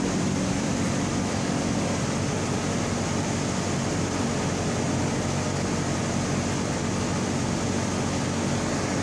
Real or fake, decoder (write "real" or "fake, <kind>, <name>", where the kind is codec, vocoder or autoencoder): real